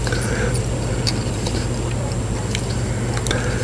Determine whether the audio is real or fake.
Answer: real